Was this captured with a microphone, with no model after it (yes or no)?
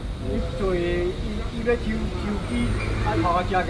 yes